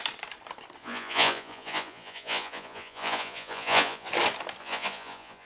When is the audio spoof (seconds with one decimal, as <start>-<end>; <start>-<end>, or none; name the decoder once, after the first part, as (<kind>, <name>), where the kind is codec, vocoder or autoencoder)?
0.8-4.1 (vocoder, Vocos); 4.6-5.5